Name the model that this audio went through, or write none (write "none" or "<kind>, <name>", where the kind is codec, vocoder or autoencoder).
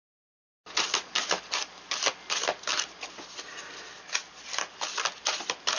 none